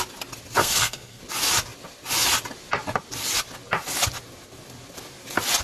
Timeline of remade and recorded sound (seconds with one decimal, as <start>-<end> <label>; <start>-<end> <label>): 0.0-0.6 recorded; 0.6-1.2 remade; 1.2-5.6 recorded